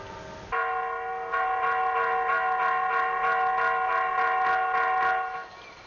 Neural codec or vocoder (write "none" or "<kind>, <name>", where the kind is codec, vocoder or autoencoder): none